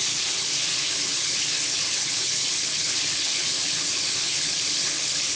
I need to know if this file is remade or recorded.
remade